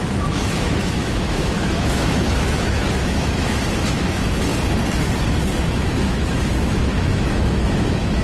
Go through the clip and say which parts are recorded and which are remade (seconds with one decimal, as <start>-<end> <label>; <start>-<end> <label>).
0.0-4.5 remade; 4.5-5.6 recorded; 5.6-8.2 remade